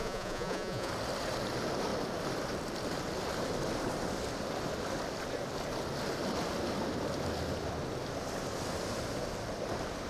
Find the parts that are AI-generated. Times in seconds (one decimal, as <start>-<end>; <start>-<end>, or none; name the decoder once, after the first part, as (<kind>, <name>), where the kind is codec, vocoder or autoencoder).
0.0-0.9 (vocoder, Vocos)